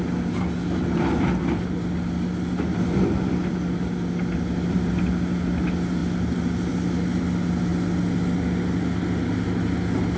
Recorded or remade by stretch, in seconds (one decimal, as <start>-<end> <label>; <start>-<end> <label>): 0.0-10.2 recorded